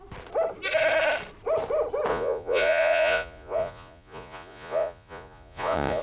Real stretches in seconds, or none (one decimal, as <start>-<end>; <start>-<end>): 0.0-2.1